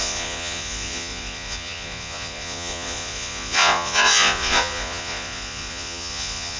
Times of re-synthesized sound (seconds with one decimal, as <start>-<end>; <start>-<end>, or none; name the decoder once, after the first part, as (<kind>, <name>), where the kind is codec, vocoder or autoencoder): 0.0-6.6 (vocoder, Vocos)